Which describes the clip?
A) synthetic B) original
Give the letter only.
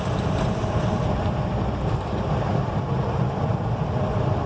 A